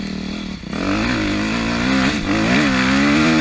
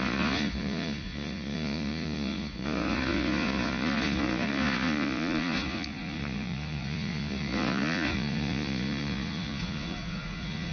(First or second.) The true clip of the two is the first